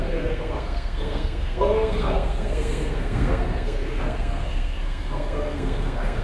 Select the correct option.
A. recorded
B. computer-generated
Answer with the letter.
B